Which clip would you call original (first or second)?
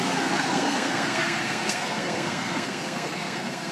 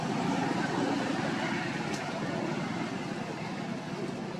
second